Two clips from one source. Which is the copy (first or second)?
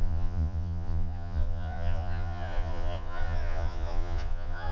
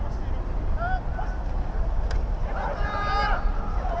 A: first